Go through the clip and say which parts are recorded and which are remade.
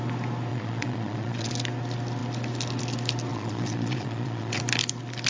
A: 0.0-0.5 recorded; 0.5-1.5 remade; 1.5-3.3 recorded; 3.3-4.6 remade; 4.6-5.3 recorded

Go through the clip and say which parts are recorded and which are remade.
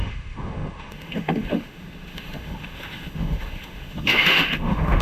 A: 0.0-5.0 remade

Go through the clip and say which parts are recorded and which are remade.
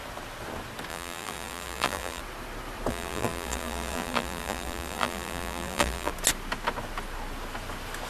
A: 0.0-0.9 recorded; 0.9-2.2 remade; 2.2-2.9 recorded; 2.9-6.1 remade; 6.1-8.1 recorded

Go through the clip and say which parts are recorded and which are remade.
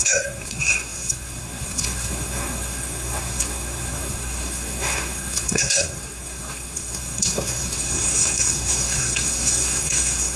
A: 0.0-10.4 remade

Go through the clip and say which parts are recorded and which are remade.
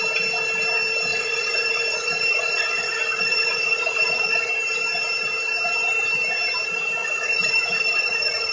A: 0.0-1.1 recorded; 1.1-4.5 remade; 4.5-7.0 recorded; 7.0-8.5 remade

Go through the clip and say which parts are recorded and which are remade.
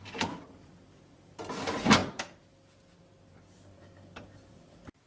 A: 0.0-5.1 recorded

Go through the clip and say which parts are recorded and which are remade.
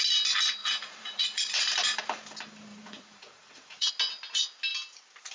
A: 0.0-0.6 recorded; 0.6-1.6 remade; 1.6-2.7 recorded; 2.7-3.9 remade; 3.9-5.3 recorded